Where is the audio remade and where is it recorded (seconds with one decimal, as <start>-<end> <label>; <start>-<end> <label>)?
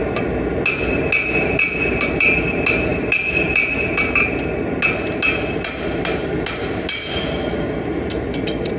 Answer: 0.0-8.8 recorded